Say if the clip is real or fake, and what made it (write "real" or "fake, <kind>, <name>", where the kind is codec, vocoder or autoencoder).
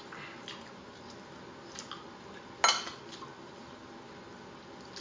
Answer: real